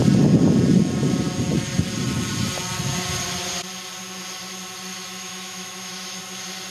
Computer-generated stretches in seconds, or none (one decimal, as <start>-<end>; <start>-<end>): 4.9-6.2